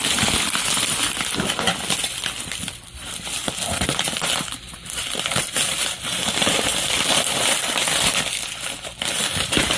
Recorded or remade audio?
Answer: remade